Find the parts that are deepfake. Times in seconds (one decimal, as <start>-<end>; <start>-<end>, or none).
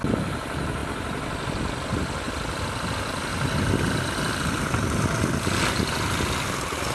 none